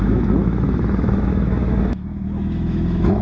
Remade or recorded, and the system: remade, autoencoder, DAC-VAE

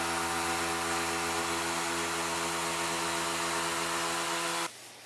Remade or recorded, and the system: recorded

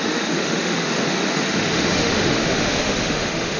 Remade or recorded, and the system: remade, autoencoder, DAC-VAE